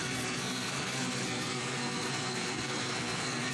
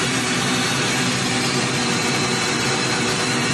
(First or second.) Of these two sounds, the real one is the second